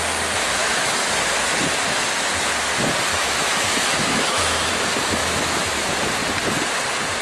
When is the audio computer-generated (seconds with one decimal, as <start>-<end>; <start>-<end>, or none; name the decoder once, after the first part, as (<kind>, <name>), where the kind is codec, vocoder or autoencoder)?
0.6-1.1 (autoencoder, DAC-VAE); 3.1-4.7; 5.2-5.9